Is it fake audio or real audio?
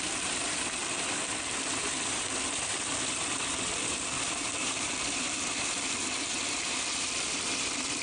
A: fake